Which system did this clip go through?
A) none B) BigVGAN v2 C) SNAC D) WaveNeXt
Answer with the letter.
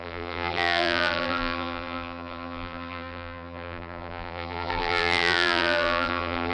B